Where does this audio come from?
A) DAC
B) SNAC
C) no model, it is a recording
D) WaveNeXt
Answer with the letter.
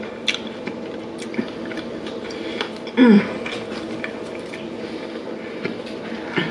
C